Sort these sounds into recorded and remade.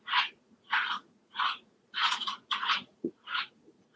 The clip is remade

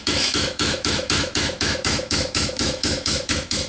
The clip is remade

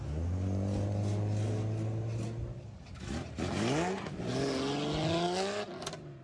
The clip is recorded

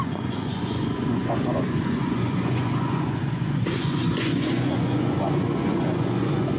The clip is remade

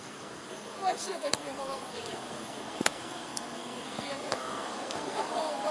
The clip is remade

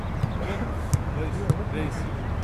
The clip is recorded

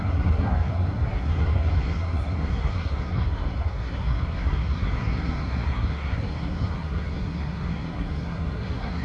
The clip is remade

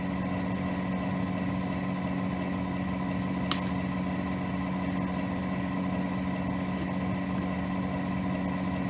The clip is recorded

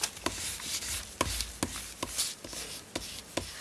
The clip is recorded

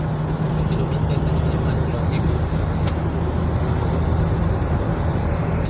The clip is recorded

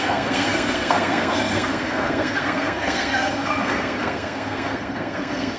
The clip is remade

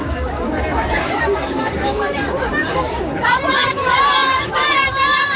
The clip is remade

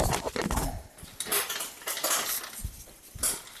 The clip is recorded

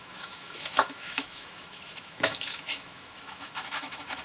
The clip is remade